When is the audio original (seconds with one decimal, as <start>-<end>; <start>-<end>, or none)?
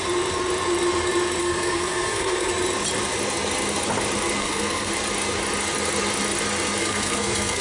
0.0-1.4; 2.5-4.4; 4.9-6.8